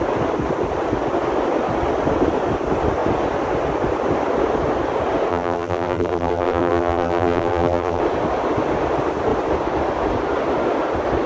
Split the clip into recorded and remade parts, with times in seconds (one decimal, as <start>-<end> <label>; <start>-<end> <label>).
0.0-5.3 recorded; 5.3-8.0 remade; 8.0-11.3 recorded